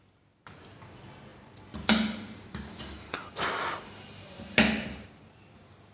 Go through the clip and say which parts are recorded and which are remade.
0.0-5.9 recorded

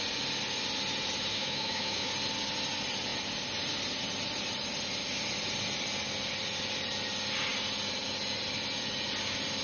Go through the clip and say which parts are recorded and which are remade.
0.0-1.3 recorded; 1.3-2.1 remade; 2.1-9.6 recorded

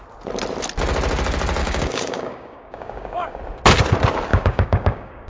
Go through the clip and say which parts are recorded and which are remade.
0.0-1.6 recorded; 1.6-3.4 remade; 3.4-4.3 recorded; 4.3-5.3 remade